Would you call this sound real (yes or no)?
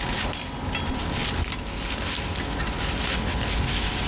yes